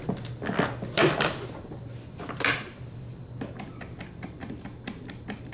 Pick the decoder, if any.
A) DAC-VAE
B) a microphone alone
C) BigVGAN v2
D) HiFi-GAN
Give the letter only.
C